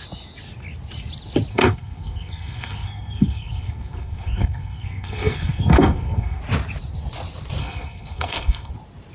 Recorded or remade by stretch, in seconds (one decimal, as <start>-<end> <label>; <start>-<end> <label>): 0.0-1.5 recorded; 1.5-6.4 remade; 6.4-7.6 recorded; 7.6-8.7 remade; 8.7-9.1 recorded